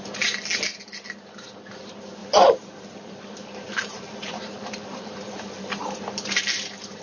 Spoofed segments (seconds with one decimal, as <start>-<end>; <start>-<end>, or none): 2.2-6.0

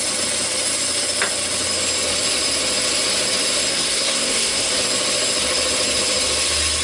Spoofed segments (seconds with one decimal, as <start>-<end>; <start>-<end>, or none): 3.7-4.7

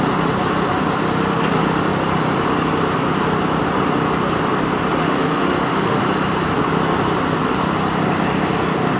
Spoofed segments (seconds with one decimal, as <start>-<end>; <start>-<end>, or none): 5.0-6.0

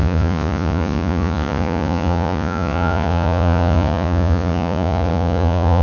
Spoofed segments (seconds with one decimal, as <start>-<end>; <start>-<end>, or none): 0.0-5.8

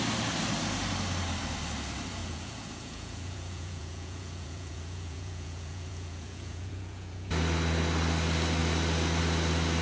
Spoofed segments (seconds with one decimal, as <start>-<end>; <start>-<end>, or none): 2.2-7.3

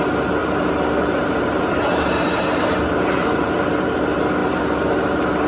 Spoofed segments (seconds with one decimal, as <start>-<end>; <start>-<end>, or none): 0.4-3.7

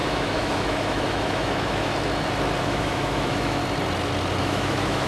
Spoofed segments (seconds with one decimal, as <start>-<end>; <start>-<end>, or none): 0.0-1.9; 2.6-3.6; 4.4-5.1